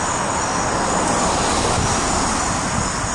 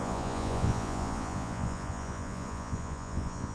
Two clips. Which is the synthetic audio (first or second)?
second